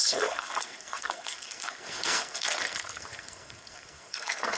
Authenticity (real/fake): fake